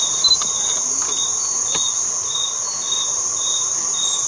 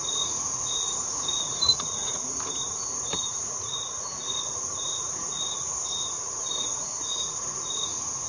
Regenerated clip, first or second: second